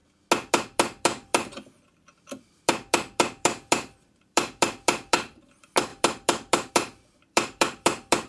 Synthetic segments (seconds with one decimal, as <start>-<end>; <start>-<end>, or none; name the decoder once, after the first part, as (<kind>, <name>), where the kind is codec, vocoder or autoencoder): 0.5-8.3 (vocoder, BigVGAN v2)